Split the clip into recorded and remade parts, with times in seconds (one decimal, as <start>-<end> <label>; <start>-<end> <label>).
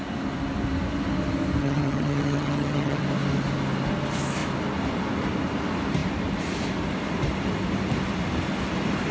0.0-1.6 recorded; 1.6-3.0 remade; 3.0-9.1 recorded